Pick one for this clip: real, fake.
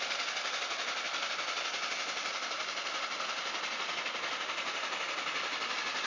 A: real